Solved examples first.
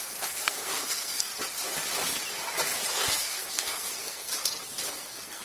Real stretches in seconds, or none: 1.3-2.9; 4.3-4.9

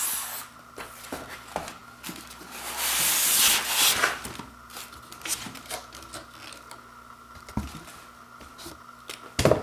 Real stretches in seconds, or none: 0.0-9.6

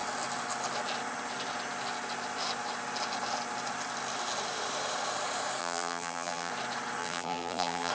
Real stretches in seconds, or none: 0.0-5.6; 6.5-7.0

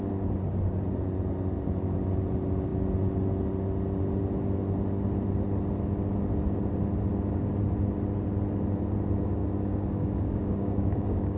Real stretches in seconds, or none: 0.0-9.4

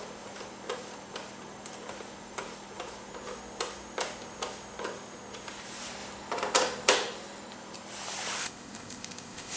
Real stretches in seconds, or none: 0.0-8.4

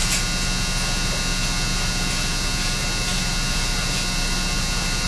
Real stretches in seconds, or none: 0.0-5.1